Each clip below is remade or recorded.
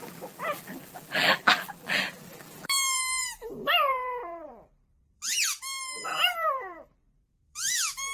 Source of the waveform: remade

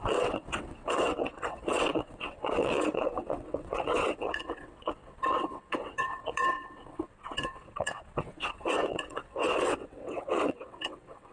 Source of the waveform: remade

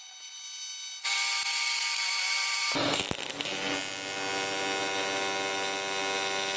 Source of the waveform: recorded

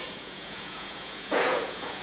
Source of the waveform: remade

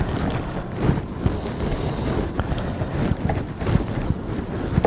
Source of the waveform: recorded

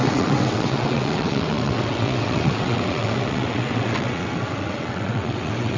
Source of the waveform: remade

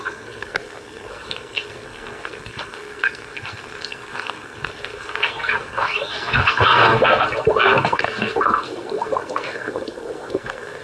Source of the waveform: remade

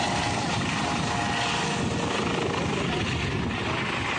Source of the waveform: recorded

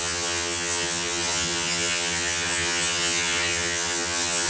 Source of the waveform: remade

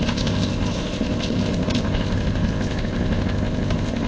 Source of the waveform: remade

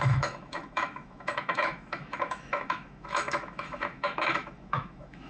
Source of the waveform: remade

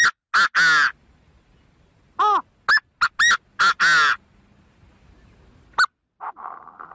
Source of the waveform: recorded